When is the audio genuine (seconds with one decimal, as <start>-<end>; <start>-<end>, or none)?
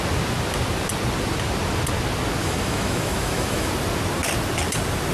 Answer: 0.0-2.4; 3.7-5.1